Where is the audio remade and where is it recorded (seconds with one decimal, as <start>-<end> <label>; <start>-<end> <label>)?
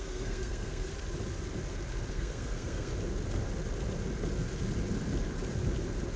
0.0-0.9 remade; 0.9-2.1 recorded; 2.1-2.9 remade; 2.9-6.2 recorded